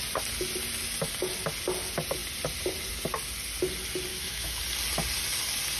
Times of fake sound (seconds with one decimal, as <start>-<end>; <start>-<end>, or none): 4.1-4.6